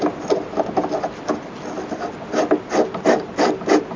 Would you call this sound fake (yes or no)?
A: no